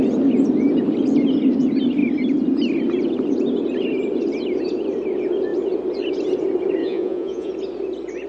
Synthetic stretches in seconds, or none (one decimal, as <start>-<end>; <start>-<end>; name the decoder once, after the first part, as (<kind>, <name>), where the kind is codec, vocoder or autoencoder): 6.8-7.5 (vocoder, Vocos)